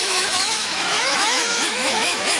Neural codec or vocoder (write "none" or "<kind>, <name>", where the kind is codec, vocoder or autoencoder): autoencoder, DAC-VAE